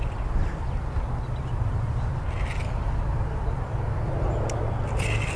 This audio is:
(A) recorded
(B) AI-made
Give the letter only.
B